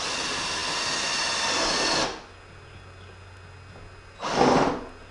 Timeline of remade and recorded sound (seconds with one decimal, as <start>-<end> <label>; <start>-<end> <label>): 0.0-5.1 recorded